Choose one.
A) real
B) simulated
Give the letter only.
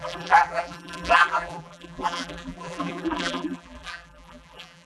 B